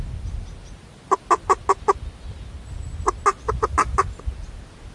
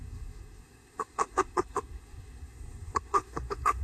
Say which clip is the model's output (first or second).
second